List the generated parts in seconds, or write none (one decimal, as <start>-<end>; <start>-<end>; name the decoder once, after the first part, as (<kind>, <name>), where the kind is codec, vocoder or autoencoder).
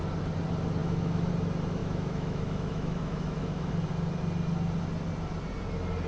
0.8-1.3 (autoencoder, DAC-VAE); 1.8-3.7